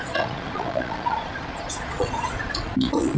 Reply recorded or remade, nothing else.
remade